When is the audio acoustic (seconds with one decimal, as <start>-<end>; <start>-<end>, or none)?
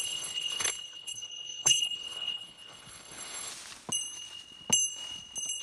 3.5-5.6